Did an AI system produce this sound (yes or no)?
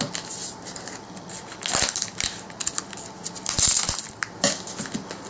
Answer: no